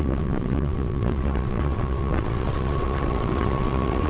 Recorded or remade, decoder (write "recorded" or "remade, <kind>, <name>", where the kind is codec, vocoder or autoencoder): remade, vocoder, WaveNeXt